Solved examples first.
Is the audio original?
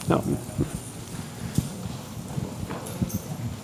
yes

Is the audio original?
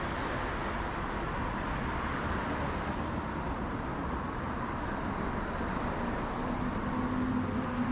yes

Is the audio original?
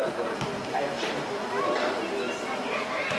yes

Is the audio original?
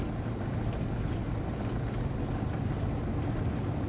yes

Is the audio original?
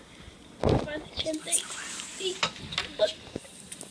yes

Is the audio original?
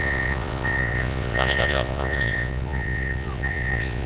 no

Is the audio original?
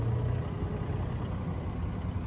yes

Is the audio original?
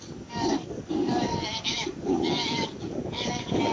no